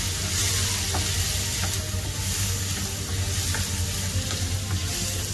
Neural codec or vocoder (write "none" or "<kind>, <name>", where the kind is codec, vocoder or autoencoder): none